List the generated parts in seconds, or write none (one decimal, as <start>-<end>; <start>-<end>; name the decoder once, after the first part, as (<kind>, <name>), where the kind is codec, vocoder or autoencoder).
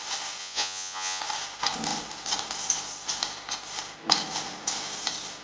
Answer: 0.4-1.2 (vocoder, Vocos)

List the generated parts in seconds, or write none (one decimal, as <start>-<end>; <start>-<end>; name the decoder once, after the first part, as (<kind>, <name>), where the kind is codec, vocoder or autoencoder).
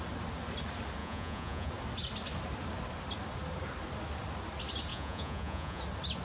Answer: 1.0-1.7 (vocoder, Vocos); 4.9-5.8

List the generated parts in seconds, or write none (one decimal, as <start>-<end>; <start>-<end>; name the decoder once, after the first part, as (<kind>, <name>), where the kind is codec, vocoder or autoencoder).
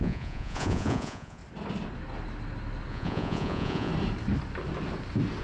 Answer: 0.0-1.4 (vocoder, Vocos); 2.9-3.9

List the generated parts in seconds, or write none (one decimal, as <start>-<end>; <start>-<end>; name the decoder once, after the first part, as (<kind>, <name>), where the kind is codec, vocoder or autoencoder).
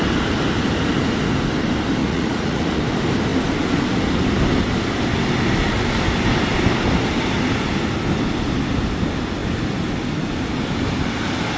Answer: 2.0-2.8 (vocoder, Vocos)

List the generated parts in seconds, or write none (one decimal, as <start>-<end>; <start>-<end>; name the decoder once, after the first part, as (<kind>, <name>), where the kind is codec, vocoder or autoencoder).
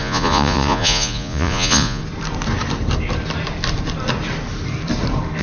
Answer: 0.0-2.0 (vocoder, Vocos)